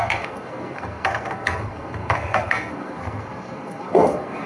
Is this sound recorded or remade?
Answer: remade